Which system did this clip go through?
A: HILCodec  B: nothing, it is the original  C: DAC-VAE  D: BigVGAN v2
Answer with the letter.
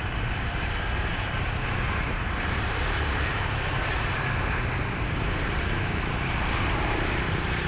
D